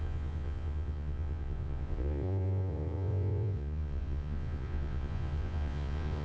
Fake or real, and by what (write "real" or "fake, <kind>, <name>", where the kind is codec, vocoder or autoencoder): fake, vocoder, Vocos